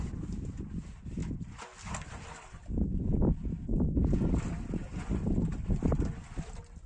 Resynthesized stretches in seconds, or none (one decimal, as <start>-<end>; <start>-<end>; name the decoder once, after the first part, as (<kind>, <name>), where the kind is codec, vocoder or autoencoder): none